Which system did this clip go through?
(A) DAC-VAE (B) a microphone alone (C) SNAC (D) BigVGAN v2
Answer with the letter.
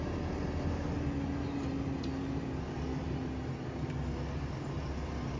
B